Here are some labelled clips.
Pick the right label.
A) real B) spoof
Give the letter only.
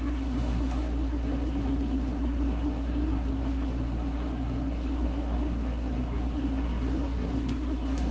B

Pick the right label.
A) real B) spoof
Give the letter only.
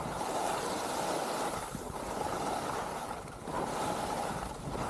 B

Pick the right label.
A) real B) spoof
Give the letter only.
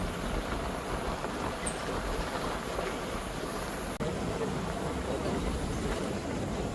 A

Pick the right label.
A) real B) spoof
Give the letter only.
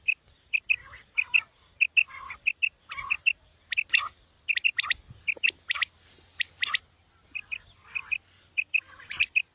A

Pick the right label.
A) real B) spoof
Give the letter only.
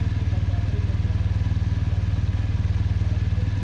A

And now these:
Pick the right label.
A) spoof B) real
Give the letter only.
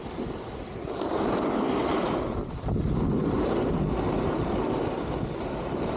B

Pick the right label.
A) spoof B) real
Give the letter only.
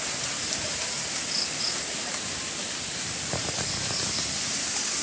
B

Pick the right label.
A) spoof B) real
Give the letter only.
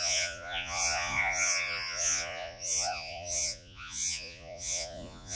A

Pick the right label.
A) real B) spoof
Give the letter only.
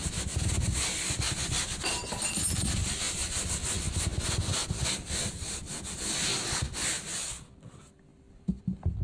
A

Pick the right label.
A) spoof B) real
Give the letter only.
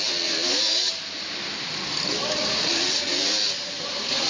B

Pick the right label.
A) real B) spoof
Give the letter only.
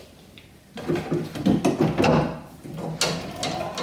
A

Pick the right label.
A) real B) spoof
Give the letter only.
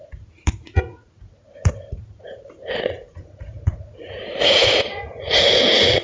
B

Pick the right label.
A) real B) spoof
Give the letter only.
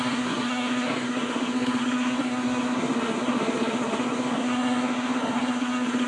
B